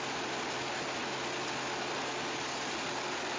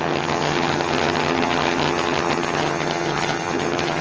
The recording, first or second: first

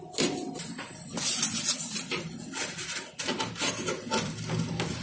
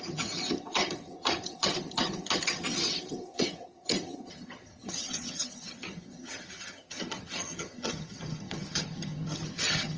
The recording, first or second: first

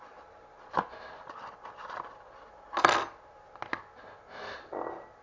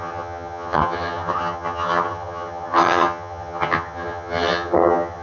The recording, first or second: first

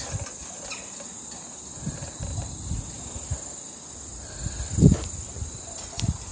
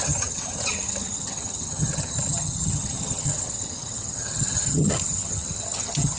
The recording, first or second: first